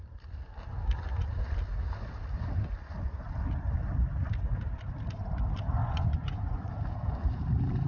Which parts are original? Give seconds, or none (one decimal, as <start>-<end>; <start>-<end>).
0.0-5.8; 6.7-7.9